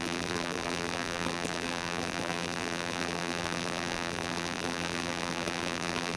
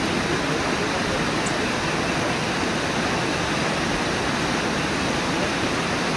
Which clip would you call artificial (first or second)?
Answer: first